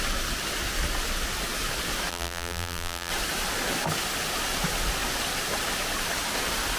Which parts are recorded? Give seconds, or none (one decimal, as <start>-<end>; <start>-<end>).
0.0-2.1; 3.1-6.8